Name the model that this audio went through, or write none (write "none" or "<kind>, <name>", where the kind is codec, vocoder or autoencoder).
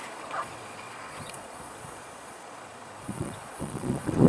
vocoder, Vocos